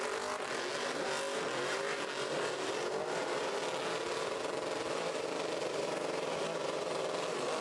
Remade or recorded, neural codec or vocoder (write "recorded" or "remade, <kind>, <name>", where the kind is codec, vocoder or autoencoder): recorded